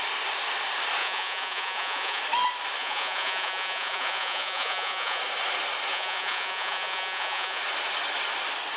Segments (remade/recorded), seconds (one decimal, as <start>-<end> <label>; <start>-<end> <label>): 0.0-1.0 recorded; 1.0-2.2 remade; 2.2-2.8 recorded; 2.8-5.2 remade; 5.2-5.9 recorded; 5.9-7.6 remade; 7.6-8.8 recorded